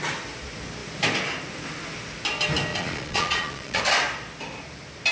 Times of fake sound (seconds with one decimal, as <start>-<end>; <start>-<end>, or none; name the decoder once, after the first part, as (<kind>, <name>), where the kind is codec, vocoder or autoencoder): 2.7-3.8 (vocoder, Vocos)